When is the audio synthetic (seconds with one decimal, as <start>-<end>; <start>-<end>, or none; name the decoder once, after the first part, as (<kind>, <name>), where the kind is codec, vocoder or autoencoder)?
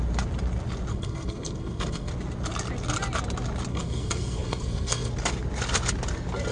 0.9-2.1 (codec, SNAC); 3.7-5.1